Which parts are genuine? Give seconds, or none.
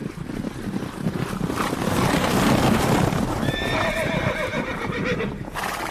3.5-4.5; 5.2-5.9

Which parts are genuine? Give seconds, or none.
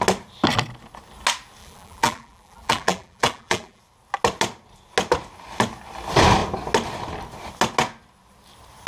0.0-1.6; 3.8-8.9